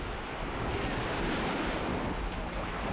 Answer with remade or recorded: recorded